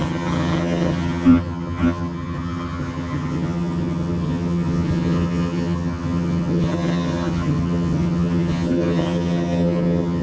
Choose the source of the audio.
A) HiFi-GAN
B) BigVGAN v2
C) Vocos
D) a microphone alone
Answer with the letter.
A